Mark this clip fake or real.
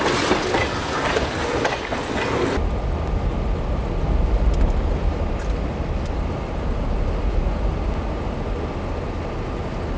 real